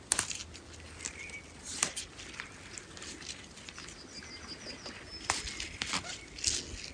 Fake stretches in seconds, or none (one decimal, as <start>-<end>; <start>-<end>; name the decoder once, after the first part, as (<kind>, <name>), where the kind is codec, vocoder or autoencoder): 0.4-4.2 (vocoder, BigVGAN v2)